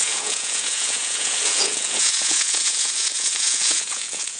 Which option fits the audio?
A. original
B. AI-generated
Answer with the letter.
B